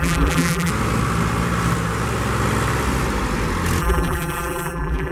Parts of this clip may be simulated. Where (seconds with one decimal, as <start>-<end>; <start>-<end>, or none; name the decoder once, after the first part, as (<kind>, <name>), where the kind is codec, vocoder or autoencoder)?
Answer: 0.0-0.7 (vocoder, BigVGAN v2); 3.8-5.1